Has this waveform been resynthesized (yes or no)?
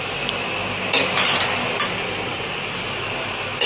no